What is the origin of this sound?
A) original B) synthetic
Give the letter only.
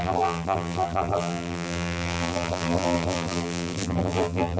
B